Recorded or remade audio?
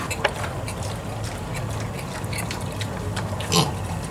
recorded